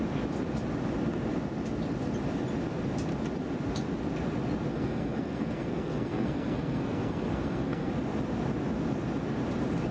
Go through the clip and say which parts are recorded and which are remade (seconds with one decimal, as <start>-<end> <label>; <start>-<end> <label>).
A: 0.0-4.7 recorded; 4.7-7.9 remade; 7.9-9.9 recorded